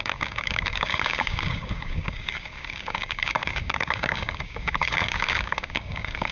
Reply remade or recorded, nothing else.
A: remade